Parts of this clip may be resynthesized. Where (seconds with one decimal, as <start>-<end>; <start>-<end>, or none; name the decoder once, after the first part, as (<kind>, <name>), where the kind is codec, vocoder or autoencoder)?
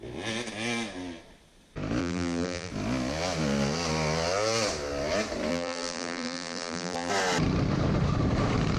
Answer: 2.0-2.7 (vocoder, BigVGAN v2); 5.5-7.1